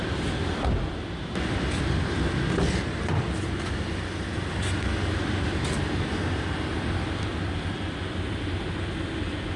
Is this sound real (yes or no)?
yes